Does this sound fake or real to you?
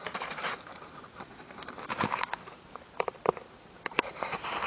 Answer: fake